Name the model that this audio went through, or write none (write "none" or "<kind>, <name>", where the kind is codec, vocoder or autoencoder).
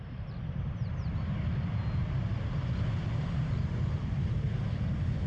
none